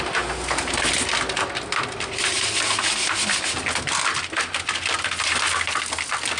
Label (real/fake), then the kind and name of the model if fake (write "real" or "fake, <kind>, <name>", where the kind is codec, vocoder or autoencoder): real